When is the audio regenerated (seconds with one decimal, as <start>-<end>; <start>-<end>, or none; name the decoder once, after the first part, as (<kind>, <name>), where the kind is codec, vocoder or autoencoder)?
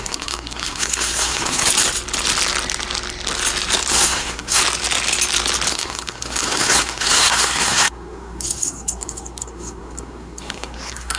0.0-1.6 (codec, SNAC); 3.9-4.6; 5.7-11.2